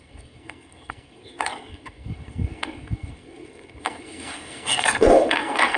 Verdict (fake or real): fake